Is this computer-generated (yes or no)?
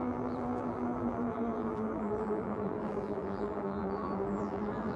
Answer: yes